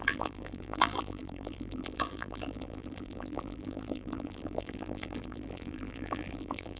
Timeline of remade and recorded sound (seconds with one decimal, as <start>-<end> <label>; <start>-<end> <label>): 0.0-6.8 remade